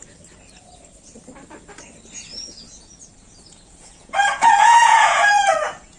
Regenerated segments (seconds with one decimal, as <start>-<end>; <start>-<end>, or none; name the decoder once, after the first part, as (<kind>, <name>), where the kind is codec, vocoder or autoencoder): 2.3-6.0 (vocoder, Vocos)